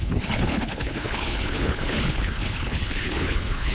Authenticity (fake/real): fake